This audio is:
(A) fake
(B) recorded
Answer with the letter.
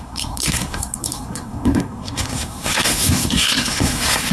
A